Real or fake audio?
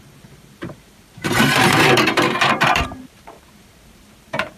fake